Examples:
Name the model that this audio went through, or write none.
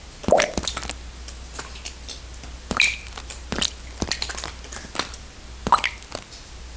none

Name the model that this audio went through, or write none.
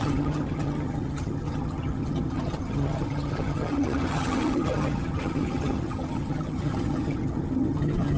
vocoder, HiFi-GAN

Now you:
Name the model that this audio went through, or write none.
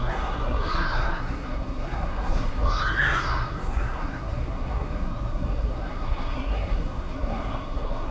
codec, SNAC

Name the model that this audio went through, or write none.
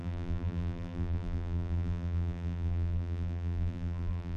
vocoder, BigVGAN v2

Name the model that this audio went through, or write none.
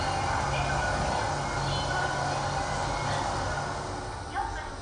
none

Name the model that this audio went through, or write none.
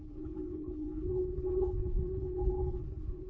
codec, HILCodec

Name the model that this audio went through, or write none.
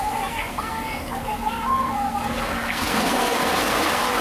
codec, SNAC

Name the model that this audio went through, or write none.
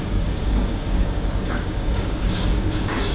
codec, DAC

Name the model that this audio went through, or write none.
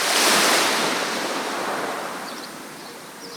vocoder, BigVGAN v2